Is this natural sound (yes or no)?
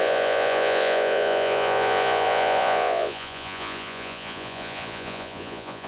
no